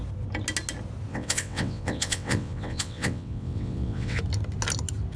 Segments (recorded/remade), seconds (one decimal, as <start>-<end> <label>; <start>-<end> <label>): 0.0-1.1 recorded; 1.1-4.2 remade; 4.2-5.2 recorded